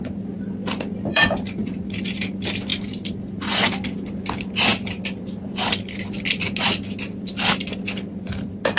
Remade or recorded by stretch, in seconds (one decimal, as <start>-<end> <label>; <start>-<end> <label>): 0.0-1.1 recorded; 1.1-1.8 remade; 1.8-2.7 recorded; 2.7-3.6 remade; 3.6-8.8 recorded